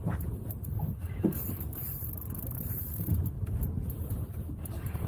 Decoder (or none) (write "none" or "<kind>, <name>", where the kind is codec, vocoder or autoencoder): vocoder, BigVGAN v2